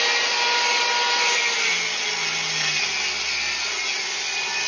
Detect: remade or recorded recorded